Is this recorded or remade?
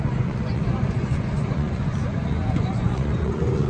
remade